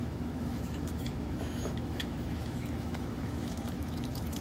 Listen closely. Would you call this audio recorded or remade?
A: remade